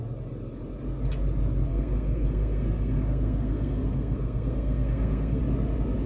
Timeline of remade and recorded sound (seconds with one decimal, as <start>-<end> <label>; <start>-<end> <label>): 0.0-1.7 recorded; 1.7-5.4 remade; 5.4-6.1 recorded